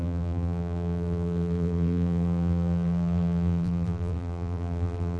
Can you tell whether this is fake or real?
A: fake